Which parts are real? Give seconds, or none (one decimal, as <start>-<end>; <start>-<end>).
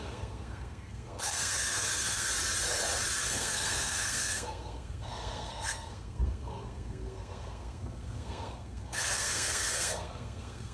2.3-3.2